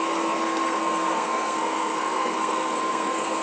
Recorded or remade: remade